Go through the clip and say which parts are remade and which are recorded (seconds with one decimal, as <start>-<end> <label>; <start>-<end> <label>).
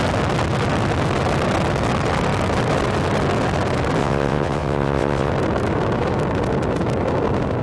0.0-4.0 recorded; 4.0-5.3 remade; 5.3-7.6 recorded